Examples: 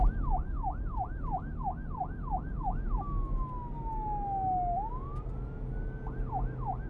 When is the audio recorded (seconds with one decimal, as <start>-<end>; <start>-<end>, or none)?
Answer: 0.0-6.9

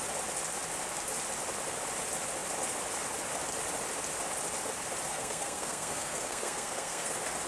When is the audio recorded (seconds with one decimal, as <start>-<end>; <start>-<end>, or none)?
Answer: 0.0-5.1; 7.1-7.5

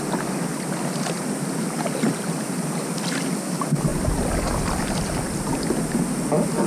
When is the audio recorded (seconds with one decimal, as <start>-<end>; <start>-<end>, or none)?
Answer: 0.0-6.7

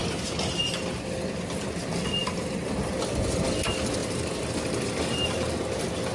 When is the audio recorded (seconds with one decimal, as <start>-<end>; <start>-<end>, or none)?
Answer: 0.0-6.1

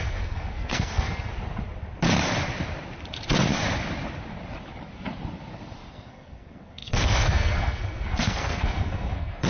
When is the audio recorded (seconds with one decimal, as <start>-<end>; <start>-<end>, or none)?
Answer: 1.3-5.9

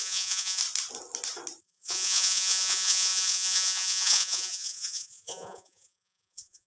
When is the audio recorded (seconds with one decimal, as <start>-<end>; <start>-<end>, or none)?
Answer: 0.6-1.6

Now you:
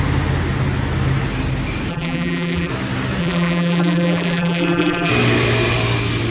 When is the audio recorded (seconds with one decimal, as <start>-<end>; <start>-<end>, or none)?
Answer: 0.0-1.9; 2.7-3.2; 5.1-6.3